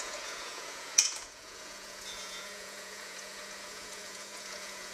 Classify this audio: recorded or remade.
remade